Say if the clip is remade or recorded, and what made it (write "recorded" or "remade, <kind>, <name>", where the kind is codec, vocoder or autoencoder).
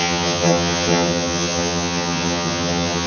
remade, vocoder, HiFi-GAN